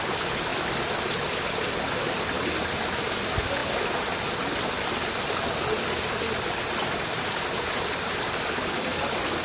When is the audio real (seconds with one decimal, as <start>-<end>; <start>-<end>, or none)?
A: 0.0-9.4